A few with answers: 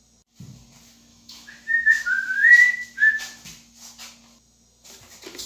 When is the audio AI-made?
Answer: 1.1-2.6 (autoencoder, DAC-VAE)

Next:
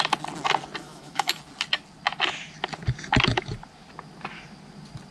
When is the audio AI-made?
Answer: 0.8-1.4 (autoencoder, DAC-VAE)

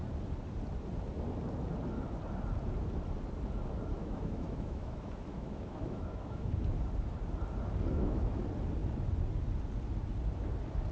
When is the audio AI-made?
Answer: 4.0-6.6 (autoencoder, DAC-VAE); 7.9-8.4

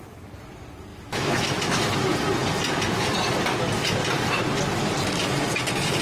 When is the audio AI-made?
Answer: 0.9-1.9 (autoencoder, DAC-VAE)